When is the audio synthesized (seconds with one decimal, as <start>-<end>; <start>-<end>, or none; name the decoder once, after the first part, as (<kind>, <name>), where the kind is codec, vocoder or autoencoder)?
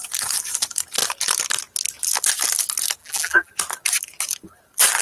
3.0-3.5 (vocoder, BigVGAN v2)